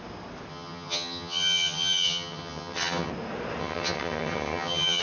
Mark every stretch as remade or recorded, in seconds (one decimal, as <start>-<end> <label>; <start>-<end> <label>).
0.0-0.5 recorded; 0.5-3.1 remade; 3.1-3.6 recorded; 3.6-5.0 remade